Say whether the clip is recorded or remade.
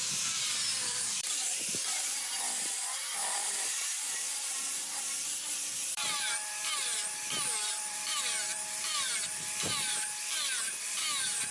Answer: remade